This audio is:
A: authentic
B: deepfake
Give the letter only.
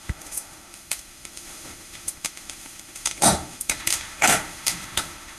B